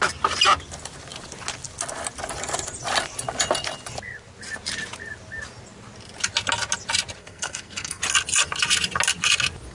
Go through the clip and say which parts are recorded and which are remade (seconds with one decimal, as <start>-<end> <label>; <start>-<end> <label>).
0.0-7.2 recorded; 7.2-8.0 remade; 8.0-9.7 recorded